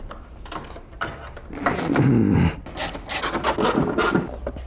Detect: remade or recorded recorded